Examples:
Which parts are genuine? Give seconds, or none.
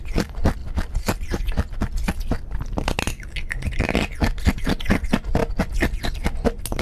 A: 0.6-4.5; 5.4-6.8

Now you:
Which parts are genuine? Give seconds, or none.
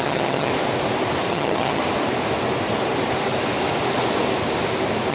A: 0.5-1.3; 1.8-5.1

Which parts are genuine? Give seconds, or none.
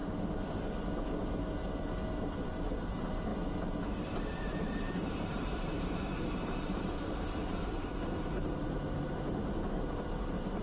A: 0.0-2.4; 3.3-4.0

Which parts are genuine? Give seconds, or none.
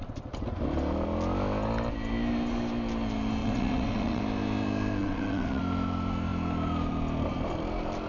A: 0.0-3.4; 4.2-5.0; 5.6-8.1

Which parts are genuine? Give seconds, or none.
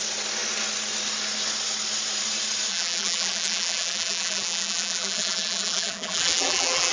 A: 0.0-2.7